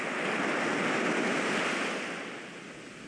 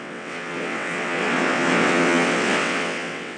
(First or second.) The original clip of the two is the first